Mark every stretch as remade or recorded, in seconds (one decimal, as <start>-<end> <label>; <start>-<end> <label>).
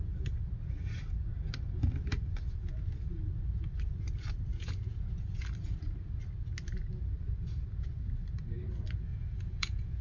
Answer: 0.0-4.5 recorded; 4.5-5.4 remade; 5.4-9.1 recorded; 9.1-10.0 remade